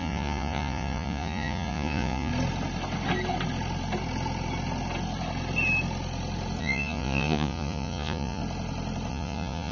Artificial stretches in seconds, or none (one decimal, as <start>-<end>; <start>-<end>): 0.0-2.3; 6.6-8.4; 9.1-9.7